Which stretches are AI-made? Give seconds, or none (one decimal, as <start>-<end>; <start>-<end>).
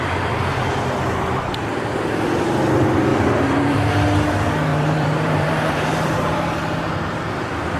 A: 3.1-3.9; 4.7-6.5